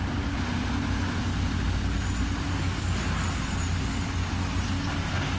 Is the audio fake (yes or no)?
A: no